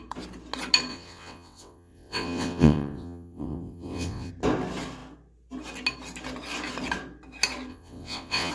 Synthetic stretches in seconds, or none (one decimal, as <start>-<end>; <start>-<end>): 0.9-4.3; 7.7-8.5